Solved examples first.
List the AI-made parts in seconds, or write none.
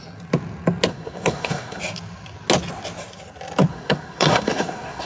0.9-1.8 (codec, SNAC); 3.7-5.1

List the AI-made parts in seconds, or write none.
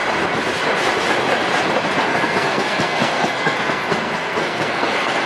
2.1-5.3 (codec, SNAC)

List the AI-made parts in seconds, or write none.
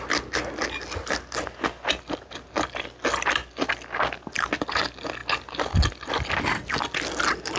none